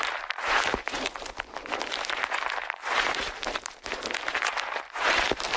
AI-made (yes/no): yes